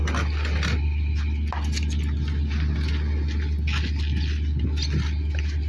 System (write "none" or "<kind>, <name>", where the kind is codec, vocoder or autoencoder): none